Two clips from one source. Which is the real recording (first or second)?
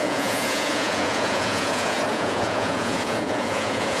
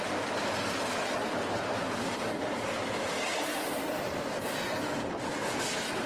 second